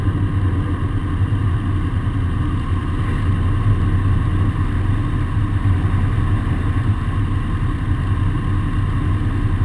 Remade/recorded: recorded